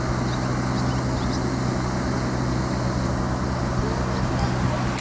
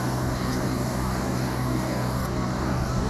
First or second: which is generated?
second